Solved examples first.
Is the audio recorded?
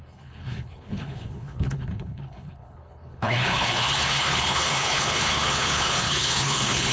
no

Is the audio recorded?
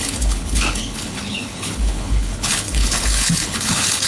no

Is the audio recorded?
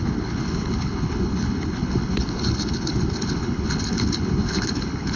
no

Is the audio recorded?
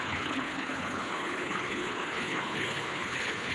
no